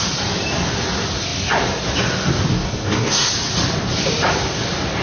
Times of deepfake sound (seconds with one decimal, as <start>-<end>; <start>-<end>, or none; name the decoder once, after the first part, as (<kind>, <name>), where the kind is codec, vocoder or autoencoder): 2.5-3.3 (codec, SNAC)